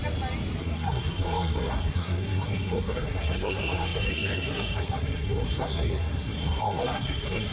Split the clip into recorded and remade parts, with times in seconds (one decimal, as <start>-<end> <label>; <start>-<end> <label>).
0.0-0.6 recorded; 0.6-7.5 remade